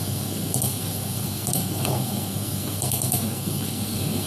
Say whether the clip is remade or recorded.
remade